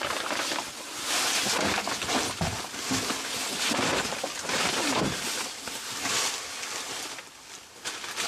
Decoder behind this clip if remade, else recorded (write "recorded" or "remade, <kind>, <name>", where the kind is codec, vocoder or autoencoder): recorded